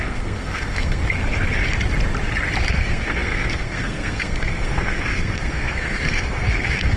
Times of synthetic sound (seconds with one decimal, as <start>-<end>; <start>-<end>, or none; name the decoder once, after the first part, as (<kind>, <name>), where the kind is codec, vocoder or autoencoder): 0.0-1.0 (codec, SNAC); 2.7-7.0